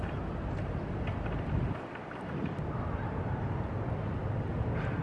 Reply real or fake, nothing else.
real